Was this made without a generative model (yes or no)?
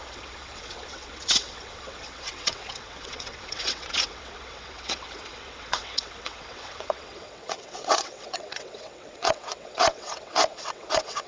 no